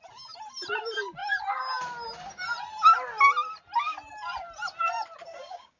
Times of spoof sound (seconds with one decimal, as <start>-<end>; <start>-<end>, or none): 5.3-5.8